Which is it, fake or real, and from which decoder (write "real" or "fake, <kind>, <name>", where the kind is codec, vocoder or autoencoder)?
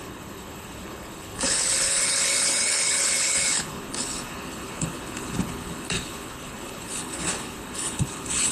fake, codec, HILCodec